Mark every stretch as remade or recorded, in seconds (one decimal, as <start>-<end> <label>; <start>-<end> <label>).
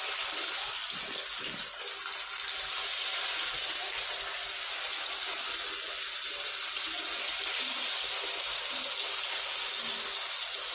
0.0-10.7 recorded